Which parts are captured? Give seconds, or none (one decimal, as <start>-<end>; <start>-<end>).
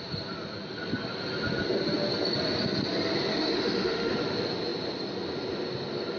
0.0-3.3; 4.1-6.2